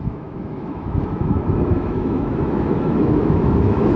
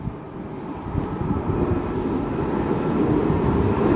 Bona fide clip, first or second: second